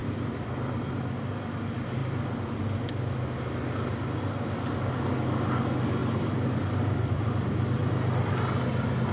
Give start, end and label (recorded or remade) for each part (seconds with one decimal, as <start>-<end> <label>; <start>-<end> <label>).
0.0-1.2 remade; 1.2-2.0 recorded; 2.0-2.6 remade; 2.6-6.0 recorded; 6.0-7.9 remade; 7.9-9.1 recorded